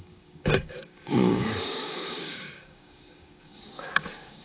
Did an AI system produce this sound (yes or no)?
yes